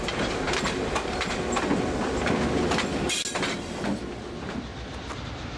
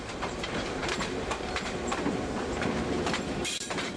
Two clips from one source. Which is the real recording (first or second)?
first